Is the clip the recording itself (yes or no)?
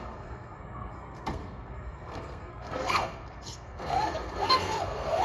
no